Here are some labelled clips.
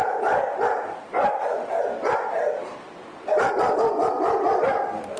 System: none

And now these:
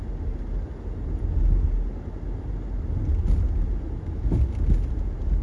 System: none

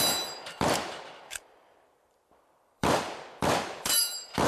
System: vocoder, BigVGAN v2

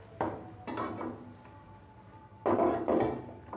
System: none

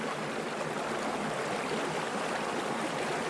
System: none